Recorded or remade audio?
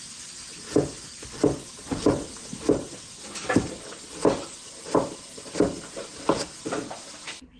recorded